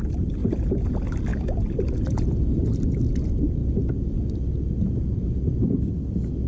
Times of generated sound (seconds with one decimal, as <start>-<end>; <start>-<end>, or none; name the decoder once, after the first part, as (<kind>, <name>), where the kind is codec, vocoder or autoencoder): none